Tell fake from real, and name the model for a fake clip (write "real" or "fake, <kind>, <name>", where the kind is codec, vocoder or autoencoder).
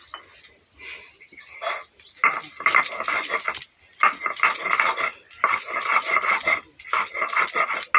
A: real